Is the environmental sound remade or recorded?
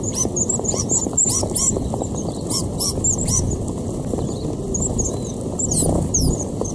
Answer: recorded